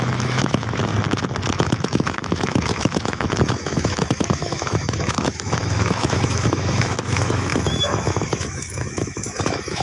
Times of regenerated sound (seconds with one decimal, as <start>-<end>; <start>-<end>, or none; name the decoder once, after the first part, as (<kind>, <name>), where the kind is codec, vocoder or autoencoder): 0.0-0.9 (autoencoder, DAC-VAE); 1.5-9.8